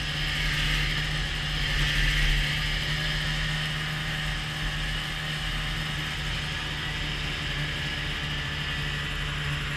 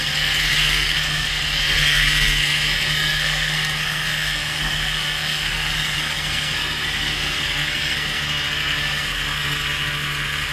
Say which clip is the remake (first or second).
second